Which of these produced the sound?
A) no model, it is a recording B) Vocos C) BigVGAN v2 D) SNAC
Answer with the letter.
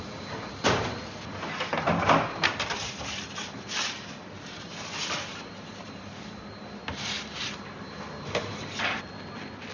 A